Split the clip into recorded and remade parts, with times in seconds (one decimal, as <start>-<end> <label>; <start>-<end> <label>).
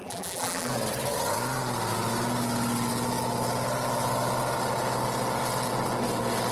0.0-0.7 remade; 0.7-6.5 recorded